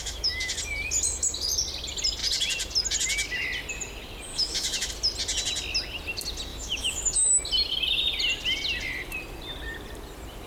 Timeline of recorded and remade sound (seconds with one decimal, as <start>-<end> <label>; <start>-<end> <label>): 0.0-0.5 remade; 0.5-4.3 recorded; 4.3-4.9 remade; 4.9-6.5 recorded; 6.5-7.3 remade; 7.3-10.5 recorded